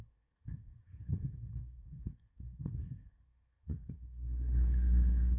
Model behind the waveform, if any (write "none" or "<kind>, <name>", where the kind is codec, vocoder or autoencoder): codec, SNAC